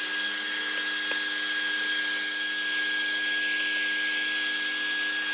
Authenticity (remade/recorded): recorded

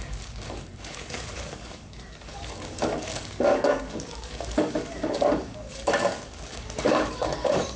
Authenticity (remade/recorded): remade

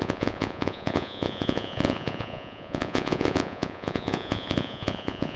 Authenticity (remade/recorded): remade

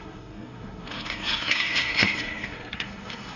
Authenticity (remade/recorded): remade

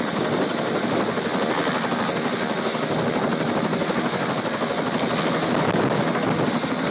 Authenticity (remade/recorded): recorded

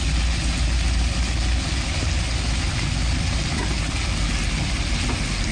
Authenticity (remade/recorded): recorded